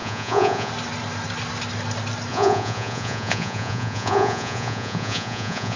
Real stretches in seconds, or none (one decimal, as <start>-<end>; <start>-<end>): 0.7-2.3